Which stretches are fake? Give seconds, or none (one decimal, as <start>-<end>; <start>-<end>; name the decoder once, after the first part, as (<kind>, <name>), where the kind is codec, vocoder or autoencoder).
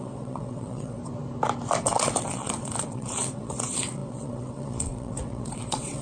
0.0-1.0 (vocoder, WaveNeXt); 1.8-6.0